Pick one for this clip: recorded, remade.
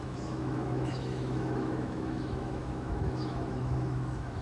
remade